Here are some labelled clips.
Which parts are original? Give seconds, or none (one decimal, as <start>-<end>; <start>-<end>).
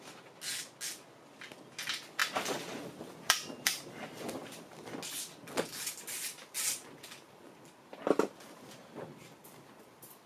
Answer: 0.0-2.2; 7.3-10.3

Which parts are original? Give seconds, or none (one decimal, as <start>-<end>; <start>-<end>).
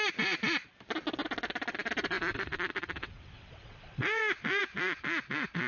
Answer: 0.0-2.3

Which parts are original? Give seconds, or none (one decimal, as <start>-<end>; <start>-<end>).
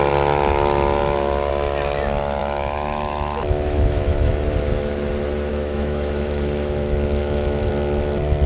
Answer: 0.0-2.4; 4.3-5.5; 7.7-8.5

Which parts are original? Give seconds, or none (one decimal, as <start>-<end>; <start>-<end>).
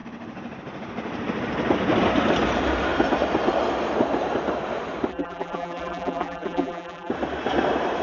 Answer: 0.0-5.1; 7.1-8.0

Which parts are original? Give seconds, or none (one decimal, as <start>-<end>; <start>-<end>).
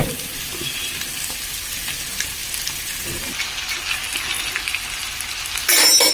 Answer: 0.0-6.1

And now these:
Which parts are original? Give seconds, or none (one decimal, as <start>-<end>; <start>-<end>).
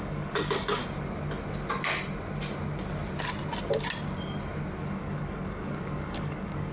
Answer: 0.8-4.8